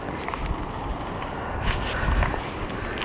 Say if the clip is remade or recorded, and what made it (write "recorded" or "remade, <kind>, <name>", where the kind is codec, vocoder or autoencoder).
recorded